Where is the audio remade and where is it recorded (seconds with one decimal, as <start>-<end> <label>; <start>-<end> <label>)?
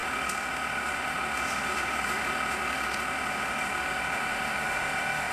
0.0-5.3 remade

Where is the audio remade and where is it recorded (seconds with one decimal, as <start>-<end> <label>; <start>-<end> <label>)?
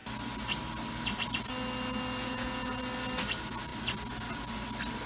0.0-2.2 recorded; 2.2-2.8 remade; 2.8-5.1 recorded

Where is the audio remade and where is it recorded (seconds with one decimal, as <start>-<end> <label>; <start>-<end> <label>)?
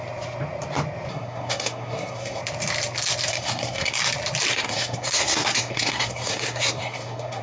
0.0-1.1 recorded; 1.1-2.4 remade; 2.4-3.3 recorded; 3.3-4.0 remade; 4.0-4.5 recorded; 4.5-7.4 remade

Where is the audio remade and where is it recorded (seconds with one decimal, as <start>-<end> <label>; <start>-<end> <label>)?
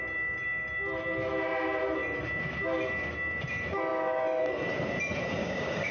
0.0-5.4 recorded; 5.4-5.9 remade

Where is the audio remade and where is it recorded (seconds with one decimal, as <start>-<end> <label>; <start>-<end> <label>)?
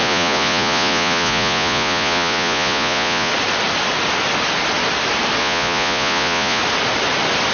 0.0-3.3 remade; 3.3-5.4 recorded; 5.4-6.6 remade; 6.6-7.5 recorded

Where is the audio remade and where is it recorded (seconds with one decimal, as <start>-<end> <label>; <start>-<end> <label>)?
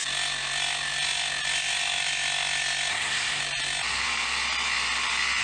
0.0-2.9 recorded; 2.9-3.4 remade; 3.4-5.4 recorded